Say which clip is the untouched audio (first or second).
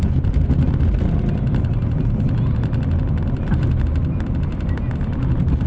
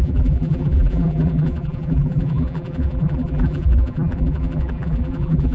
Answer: first